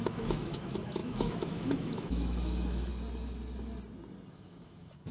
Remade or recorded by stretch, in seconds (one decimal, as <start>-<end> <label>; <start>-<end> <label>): 0.0-2.9 remade; 2.9-4.3 recorded; 4.3-5.1 remade